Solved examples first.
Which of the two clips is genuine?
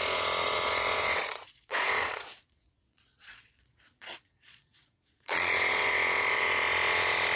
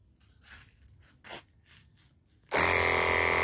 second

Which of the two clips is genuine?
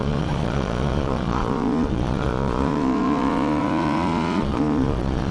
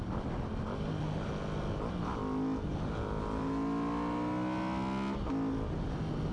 second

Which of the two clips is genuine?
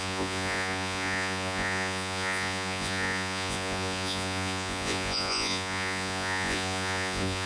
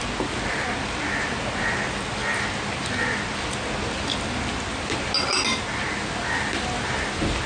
second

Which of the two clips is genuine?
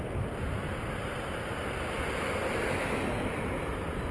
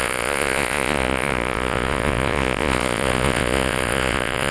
first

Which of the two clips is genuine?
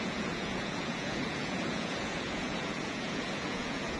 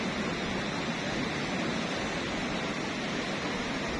second